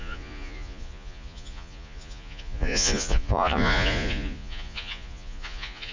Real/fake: fake